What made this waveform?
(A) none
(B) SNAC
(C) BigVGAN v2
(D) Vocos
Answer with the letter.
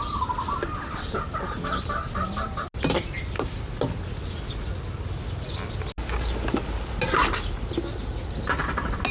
A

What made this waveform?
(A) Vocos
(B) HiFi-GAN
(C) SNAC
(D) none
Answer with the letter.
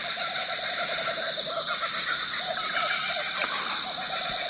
D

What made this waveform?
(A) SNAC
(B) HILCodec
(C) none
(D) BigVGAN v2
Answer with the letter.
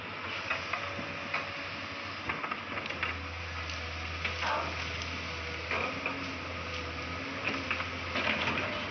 C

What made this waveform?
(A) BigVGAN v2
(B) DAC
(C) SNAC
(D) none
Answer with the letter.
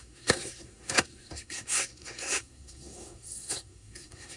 C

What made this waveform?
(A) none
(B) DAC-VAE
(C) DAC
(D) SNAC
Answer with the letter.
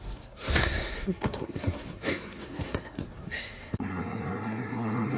D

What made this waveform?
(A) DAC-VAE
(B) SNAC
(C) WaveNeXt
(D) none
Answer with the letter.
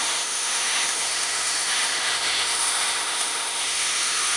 A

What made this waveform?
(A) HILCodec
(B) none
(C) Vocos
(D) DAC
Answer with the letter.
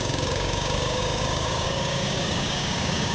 D